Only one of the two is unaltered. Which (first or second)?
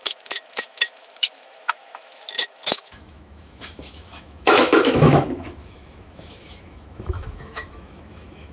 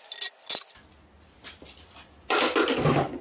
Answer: second